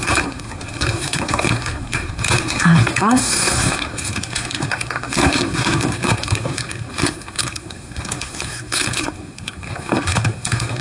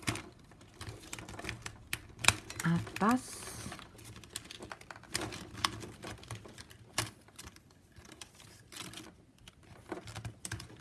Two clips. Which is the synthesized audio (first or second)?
first